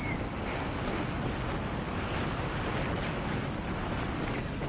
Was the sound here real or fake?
real